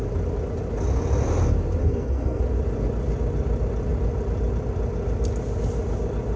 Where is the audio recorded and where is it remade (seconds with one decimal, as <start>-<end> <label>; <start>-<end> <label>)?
0.0-1.8 recorded; 1.8-2.4 remade; 2.4-6.4 recorded